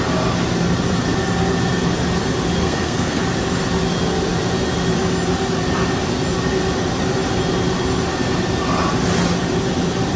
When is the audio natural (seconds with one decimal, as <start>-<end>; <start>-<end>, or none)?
0.0-2.6; 3.2-10.2